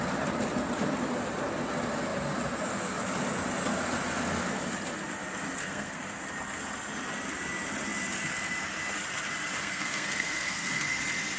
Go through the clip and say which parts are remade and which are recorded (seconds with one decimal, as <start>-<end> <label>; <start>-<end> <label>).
0.0-5.6 recorded; 5.6-6.2 remade; 6.2-9.6 recorded; 9.6-10.7 remade; 10.7-11.4 recorded